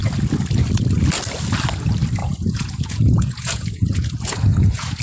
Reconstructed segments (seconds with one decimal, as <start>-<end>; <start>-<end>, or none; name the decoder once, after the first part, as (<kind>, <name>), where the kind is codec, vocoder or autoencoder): 2.2-5.0 (vocoder, Vocos)

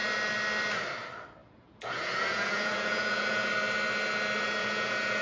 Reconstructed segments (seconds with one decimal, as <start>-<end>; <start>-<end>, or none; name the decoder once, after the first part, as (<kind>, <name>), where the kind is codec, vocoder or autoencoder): 1.4-3.5 (vocoder, Vocos); 4.6-5.2